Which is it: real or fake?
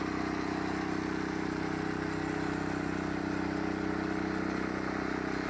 real